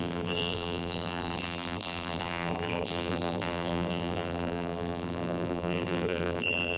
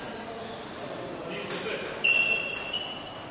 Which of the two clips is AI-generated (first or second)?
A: first